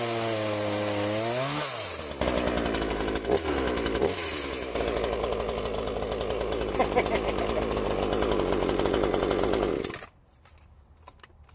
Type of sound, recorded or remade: recorded